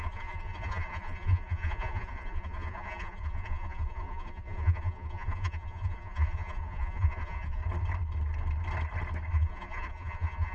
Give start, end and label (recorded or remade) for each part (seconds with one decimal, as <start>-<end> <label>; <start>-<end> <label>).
0.0-7.6 remade; 7.6-9.3 recorded; 9.3-10.5 remade